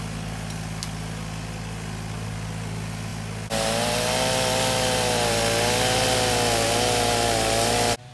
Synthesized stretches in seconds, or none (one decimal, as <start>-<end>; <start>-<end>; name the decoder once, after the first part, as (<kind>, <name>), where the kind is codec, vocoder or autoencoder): none